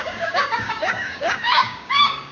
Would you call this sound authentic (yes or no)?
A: no